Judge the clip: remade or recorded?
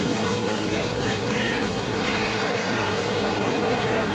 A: remade